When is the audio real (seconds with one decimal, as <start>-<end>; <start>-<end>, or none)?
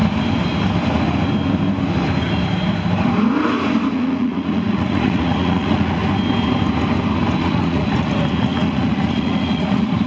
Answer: 0.0-3.9; 6.0-7.4